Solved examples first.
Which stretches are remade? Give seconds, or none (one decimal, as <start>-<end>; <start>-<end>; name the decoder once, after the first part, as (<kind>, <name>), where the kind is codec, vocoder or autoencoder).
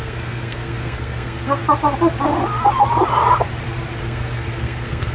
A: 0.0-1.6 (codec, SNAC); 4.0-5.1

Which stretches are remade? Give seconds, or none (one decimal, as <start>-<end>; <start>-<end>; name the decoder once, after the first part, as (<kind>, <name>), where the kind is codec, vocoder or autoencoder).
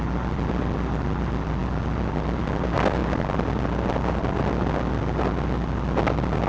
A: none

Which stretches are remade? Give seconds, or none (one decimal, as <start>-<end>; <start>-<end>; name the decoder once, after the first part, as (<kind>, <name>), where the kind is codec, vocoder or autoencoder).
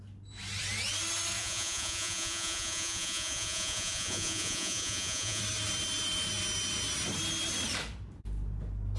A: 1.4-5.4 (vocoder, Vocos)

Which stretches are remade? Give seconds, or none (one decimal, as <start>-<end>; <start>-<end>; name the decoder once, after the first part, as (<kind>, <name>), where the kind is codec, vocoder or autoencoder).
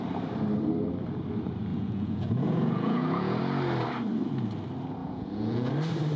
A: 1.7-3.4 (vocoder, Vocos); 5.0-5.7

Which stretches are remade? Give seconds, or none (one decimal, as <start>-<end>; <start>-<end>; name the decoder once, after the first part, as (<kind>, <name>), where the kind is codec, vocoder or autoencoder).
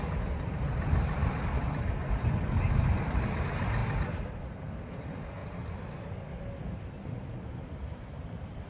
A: 0.0-3.8 (vocoder, BigVGAN v2); 4.3-5.4; 6.6-8.7